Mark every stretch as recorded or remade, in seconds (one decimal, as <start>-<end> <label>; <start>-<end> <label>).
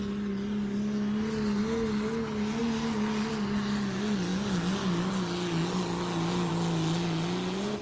0.0-7.8 recorded